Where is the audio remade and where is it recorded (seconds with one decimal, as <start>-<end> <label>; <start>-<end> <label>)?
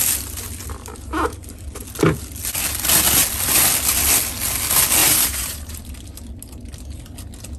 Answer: 0.0-5.0 recorded; 5.0-5.8 remade; 5.8-7.6 recorded